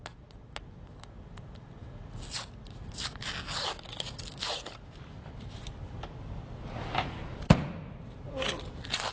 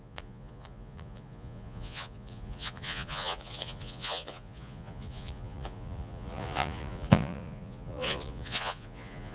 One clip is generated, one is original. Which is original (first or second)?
first